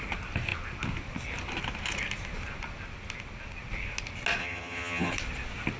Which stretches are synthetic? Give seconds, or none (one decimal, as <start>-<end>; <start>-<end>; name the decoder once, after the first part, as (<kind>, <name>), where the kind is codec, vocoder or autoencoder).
4.4-5.1 (vocoder, HiFi-GAN)